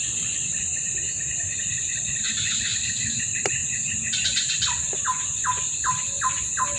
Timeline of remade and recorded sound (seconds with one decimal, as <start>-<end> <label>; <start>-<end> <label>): 0.0-2.7 remade; 2.7-3.2 recorded; 3.2-3.6 remade; 3.6-4.5 recorded; 4.5-6.8 remade